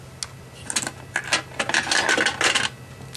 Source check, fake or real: real